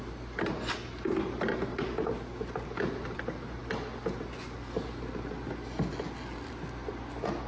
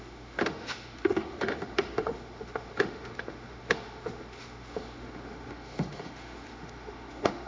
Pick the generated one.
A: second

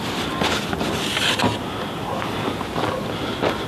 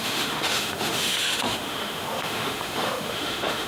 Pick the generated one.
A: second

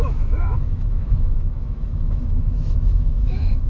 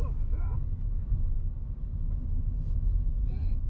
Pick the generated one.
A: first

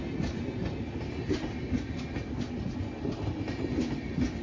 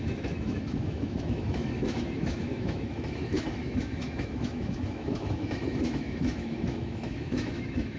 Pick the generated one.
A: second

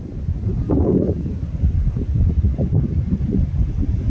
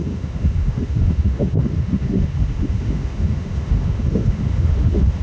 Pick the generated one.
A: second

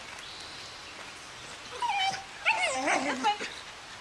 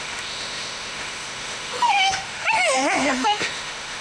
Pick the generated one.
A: second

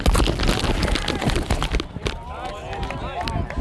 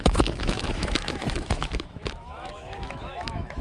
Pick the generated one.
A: second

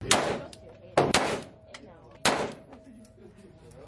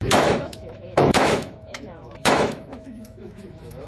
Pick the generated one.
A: second